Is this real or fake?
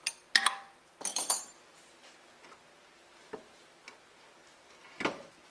real